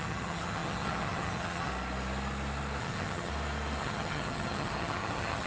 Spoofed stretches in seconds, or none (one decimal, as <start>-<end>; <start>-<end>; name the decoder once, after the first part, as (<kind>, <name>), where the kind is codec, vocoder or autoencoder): 0.0-1.7 (vocoder, HiFi-GAN); 2.8-3.3; 3.8-5.5